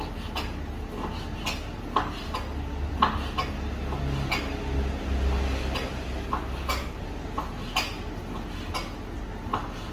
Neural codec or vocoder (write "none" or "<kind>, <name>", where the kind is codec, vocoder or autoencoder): none